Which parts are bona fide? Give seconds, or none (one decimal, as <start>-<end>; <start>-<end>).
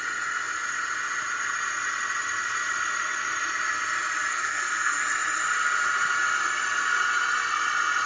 0.0-4.3; 5.0-8.1